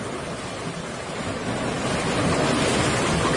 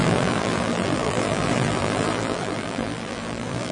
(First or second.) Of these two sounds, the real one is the first